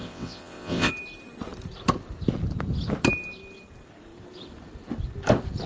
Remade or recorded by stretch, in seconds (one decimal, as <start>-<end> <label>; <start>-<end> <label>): 0.0-0.9 remade; 0.9-5.7 recorded